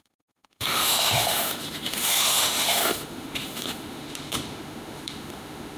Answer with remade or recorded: remade